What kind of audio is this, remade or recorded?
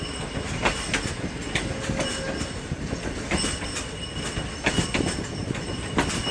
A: recorded